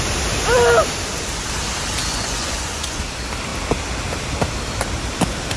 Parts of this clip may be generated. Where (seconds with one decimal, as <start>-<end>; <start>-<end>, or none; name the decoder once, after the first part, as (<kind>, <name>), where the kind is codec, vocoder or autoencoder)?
2.1-3.0 (vocoder, Vocos)